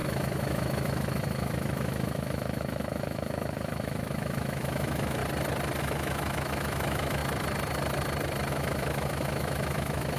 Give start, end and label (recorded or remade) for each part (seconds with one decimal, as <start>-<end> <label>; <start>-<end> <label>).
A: 0.0-5.2 remade; 5.2-5.8 recorded; 5.8-7.2 remade; 7.2-8.5 recorded; 8.5-10.2 remade